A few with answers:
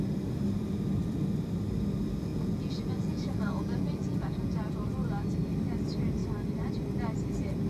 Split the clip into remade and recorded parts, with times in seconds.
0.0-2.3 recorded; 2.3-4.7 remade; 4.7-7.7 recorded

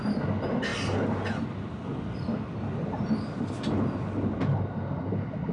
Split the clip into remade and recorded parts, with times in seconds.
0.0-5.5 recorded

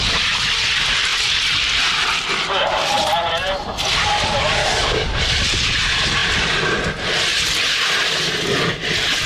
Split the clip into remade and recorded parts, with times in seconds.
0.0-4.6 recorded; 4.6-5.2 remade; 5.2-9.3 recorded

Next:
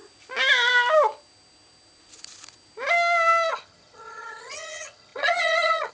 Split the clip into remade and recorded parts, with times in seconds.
0.0-3.5 recorded; 3.5-5.9 remade

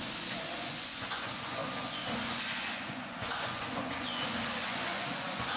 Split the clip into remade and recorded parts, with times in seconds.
0.0-5.6 remade

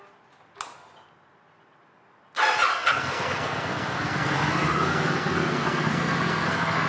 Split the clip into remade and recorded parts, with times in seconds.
0.0-2.7 recorded; 2.7-6.9 remade

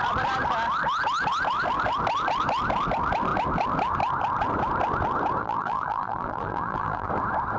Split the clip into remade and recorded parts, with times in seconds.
0.0-5.4 recorded; 5.4-7.1 remade; 7.1-7.6 recorded